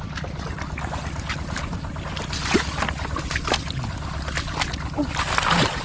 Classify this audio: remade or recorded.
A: recorded